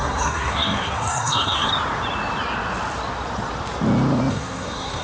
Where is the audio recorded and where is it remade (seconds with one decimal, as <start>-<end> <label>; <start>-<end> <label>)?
0.0-1.7 remade; 1.7-4.3 recorded; 4.3-5.0 remade